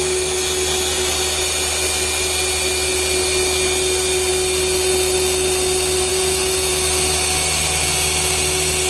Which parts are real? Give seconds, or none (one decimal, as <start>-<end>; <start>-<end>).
0.0-6.1; 6.7-8.9